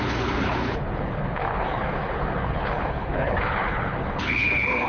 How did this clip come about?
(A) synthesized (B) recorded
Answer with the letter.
A